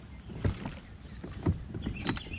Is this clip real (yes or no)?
yes